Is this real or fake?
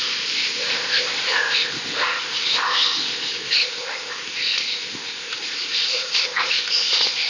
fake